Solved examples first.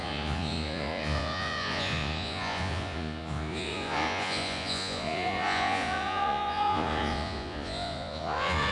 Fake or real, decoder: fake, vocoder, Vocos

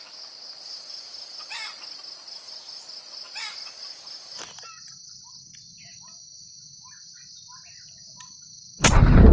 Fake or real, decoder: real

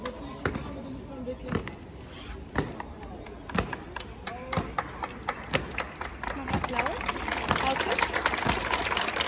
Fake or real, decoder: real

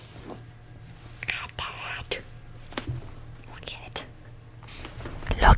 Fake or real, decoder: real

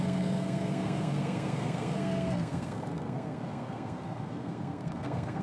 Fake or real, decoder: fake, codec, SNAC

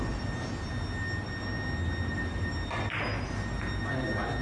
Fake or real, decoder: real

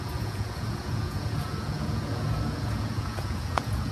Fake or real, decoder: fake, vocoder, Vocos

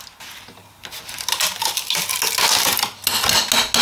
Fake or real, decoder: real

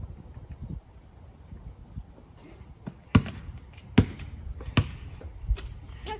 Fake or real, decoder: real